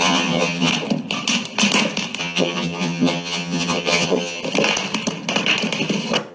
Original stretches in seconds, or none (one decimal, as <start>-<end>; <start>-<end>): 0.7-2.2; 4.4-6.3